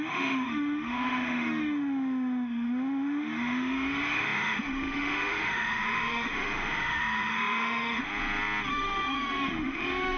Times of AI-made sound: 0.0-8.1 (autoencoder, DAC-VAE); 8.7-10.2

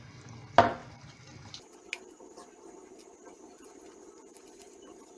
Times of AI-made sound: none

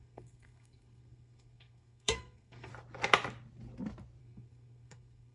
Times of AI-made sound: 0.0-2.7 (codec, SNAC); 4.2-5.3

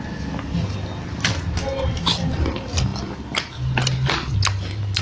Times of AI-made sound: none

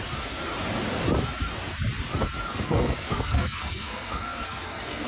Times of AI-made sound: 2.5-5.1 (codec, SNAC)

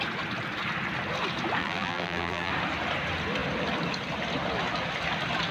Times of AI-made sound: 1.6-2.5 (vocoder, BigVGAN v2)

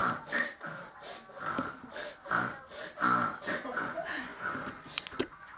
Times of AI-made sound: 3.4-5.6 (vocoder, Vocos)

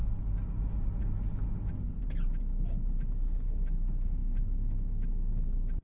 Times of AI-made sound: none